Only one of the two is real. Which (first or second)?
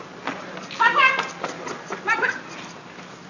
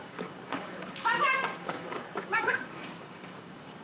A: first